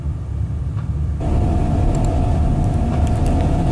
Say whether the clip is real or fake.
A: real